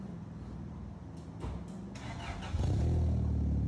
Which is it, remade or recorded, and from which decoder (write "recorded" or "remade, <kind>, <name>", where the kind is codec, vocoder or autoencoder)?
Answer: recorded